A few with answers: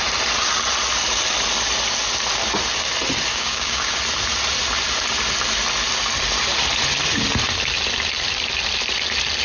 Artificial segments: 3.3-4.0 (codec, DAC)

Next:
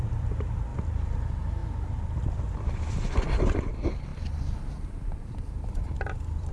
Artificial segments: 0.7-1.2 (vocoder, BigVGAN v2); 4.1-6.5

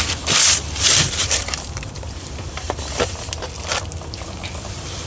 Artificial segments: 1.2-3.3 (vocoder, BigVGAN v2)

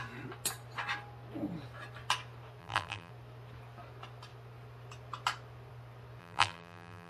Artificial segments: 2.6-3.1 (vocoder, BigVGAN v2); 6.2-7.1

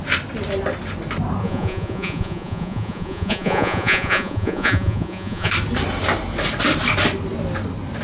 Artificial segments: 1.4-5.5 (vocoder, Vocos)

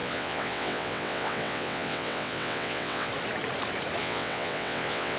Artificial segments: 0.0-3.1 (vocoder, WaveNeXt); 4.0-5.2

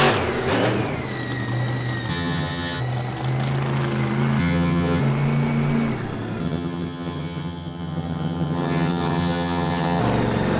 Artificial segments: 2.1-2.8 (vocoder, HiFi-GAN); 4.4-5.0; 6.4-10.0